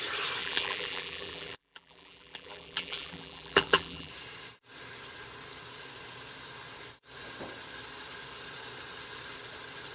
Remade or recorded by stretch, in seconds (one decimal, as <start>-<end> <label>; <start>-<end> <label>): 0.0-0.4 recorded; 0.4-4.1 remade; 4.1-9.9 recorded